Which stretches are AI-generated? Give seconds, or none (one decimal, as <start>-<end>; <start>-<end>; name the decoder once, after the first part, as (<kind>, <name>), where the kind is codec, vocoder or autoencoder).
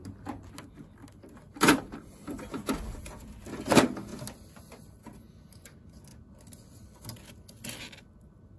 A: 1.5-3.1 (vocoder, BigVGAN v2)